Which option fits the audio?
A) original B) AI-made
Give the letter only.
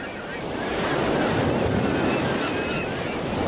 A